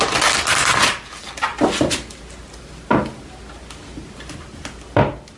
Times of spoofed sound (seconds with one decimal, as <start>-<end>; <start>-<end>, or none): none